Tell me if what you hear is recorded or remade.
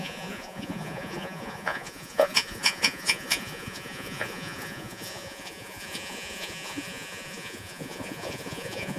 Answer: remade